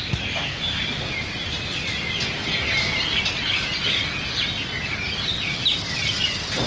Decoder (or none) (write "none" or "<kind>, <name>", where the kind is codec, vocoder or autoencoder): none